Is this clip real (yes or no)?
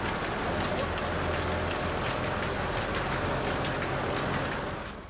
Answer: yes